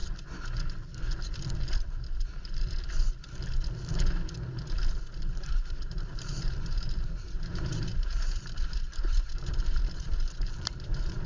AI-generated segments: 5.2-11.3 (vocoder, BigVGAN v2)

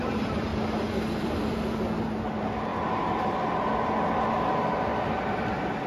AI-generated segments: 0.0-0.5 (vocoder, BigVGAN v2); 1.1-2.7; 4.2-4.9

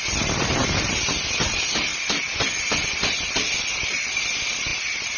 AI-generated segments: 0.0-1.9 (vocoder, BigVGAN v2); 2.5-5.2